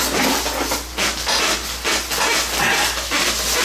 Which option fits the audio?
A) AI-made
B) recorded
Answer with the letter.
B